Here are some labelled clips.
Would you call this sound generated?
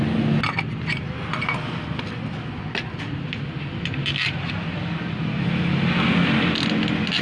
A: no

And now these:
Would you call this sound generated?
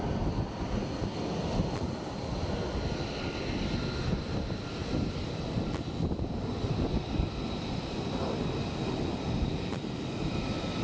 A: no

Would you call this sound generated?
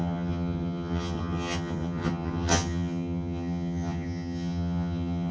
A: yes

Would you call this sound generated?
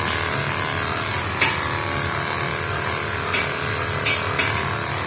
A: no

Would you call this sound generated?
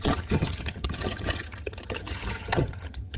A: yes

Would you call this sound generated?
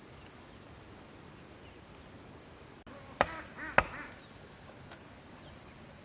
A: no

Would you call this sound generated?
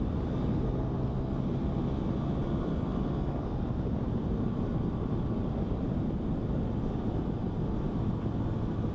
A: no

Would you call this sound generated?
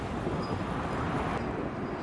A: no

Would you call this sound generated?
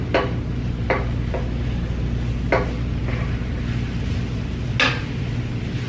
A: no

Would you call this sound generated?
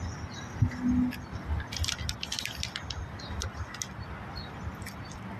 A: no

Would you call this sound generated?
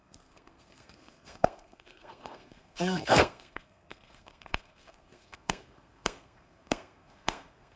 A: yes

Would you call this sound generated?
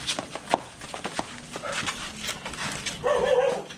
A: no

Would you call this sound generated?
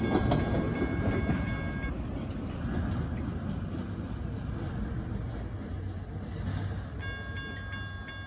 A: no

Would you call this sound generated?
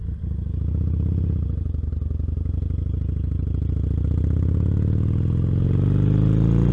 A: no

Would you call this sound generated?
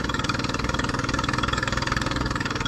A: yes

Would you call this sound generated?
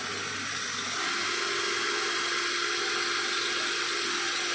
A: no